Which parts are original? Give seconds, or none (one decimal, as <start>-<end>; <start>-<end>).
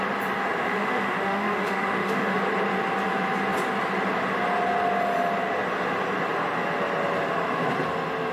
0.0-0.6; 2.4-8.3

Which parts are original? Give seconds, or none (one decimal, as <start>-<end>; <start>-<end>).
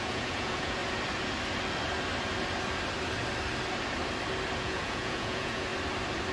0.8-4.6; 5.7-6.3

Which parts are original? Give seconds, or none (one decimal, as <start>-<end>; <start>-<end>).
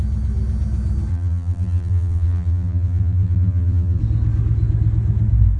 0.0-1.1; 4.0-5.6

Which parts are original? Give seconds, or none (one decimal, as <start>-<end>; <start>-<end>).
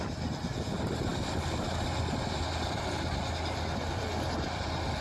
0.0-5.0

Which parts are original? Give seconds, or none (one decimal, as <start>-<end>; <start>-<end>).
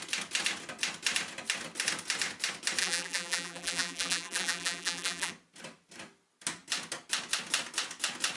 0.0-2.8; 5.3-8.4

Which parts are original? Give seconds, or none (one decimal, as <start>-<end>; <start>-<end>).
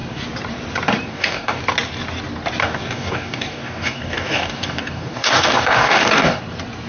0.0-1.1; 1.6-2.6; 6.4-6.9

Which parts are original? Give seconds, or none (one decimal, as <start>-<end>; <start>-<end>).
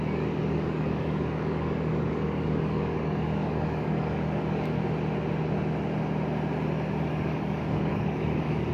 4.7-7.0